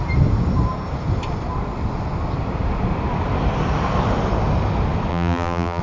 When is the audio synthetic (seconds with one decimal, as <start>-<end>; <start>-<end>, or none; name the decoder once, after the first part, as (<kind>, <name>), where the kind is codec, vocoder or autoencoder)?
5.1-5.8 (vocoder, BigVGAN v2)